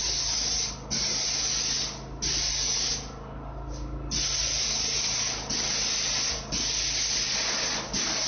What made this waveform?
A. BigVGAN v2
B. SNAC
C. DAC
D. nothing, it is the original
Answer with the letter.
D